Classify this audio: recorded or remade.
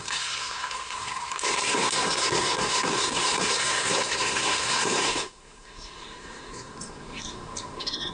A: remade